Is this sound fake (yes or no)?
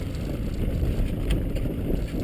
no